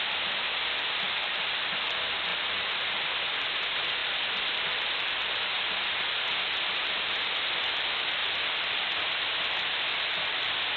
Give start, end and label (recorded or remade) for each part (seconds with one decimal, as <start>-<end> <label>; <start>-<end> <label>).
0.0-2.3 recorded; 2.3-3.3 remade; 3.3-8.2 recorded; 8.2-8.9 remade; 8.9-10.8 recorded